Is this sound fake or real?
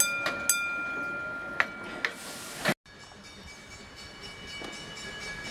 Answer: real